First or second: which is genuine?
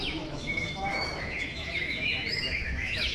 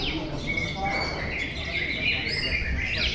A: second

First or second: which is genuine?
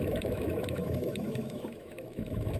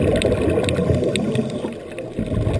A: second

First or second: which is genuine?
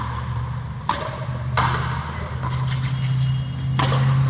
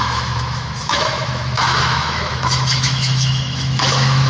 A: first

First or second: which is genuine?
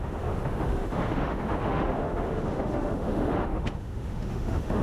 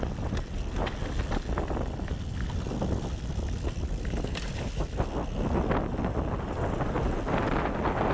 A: second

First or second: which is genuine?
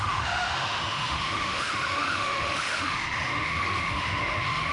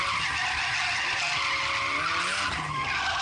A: second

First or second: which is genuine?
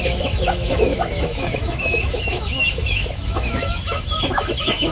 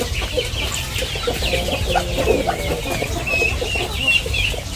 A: second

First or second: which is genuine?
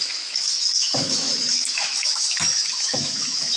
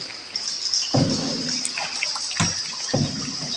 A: second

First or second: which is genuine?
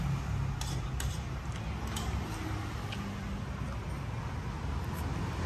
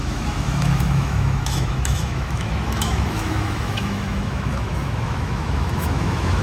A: first